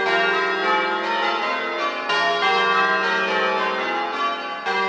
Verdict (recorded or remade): recorded